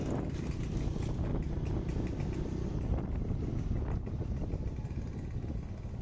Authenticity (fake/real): real